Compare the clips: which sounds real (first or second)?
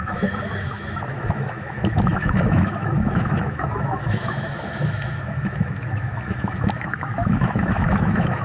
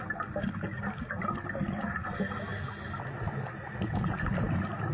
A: second